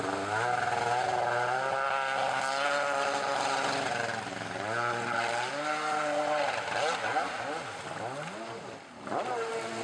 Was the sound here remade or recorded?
recorded